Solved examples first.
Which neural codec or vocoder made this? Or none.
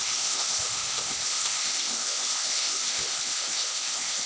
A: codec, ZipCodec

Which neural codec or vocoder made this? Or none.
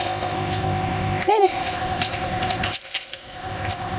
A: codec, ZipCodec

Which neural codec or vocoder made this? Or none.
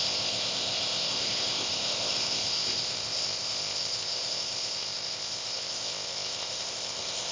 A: codec, ZipCodec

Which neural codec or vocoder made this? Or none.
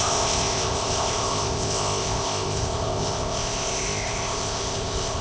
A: codec, ZipCodec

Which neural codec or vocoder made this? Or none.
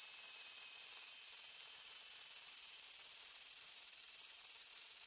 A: none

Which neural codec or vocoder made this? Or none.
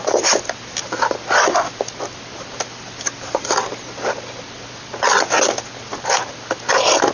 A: none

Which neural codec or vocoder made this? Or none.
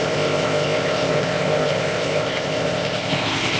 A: codec, ZipCodec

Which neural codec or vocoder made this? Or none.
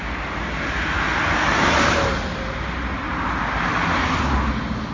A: none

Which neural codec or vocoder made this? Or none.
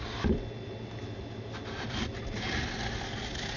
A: none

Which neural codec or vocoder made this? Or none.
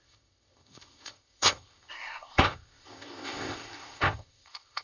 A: codec, ZipCodec